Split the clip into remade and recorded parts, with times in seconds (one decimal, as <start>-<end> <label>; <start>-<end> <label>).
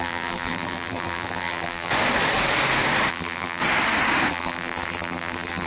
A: 0.0-1.9 remade; 1.9-3.1 recorded; 3.1-3.6 remade; 3.6-4.3 recorded; 4.3-5.7 remade